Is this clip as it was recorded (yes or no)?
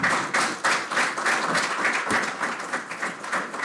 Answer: yes